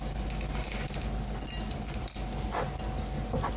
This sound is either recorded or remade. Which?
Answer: recorded